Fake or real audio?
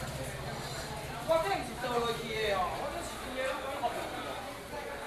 real